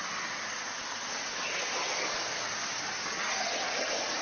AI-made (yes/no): no